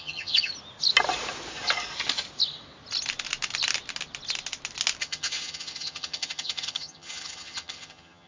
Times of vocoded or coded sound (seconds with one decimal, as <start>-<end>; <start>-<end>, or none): 0.0-0.5; 5.0-8.3

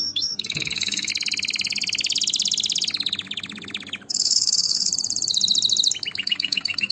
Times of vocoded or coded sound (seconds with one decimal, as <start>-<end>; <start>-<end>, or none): 0.0-1.1; 4.1-4.9; 6.2-6.9

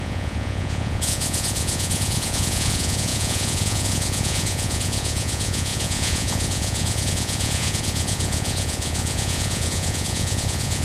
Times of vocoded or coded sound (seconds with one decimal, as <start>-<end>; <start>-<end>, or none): 0.0-10.8

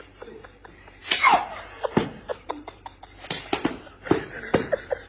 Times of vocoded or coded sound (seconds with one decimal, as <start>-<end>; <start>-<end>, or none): 0.0-1.0; 1.8-5.1

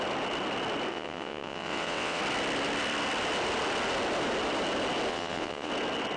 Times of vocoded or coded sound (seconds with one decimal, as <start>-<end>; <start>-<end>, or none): 0.9-2.2; 5.1-5.7

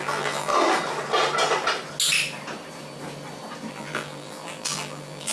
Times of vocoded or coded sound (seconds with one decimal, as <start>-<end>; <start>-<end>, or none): 0.0-0.5; 3.7-5.3